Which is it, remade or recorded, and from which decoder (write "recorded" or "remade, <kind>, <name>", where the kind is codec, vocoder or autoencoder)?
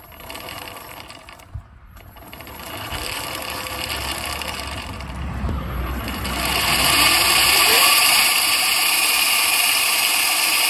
remade, vocoder, BigVGAN v2